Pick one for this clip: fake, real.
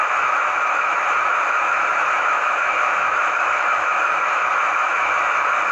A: fake